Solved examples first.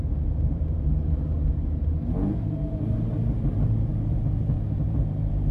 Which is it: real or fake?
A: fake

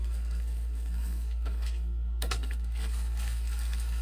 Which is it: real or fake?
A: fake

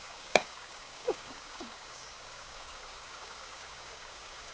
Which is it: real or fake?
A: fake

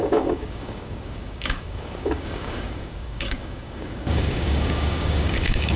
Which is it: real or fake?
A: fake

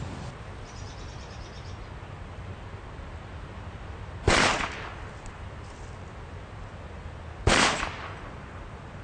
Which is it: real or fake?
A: real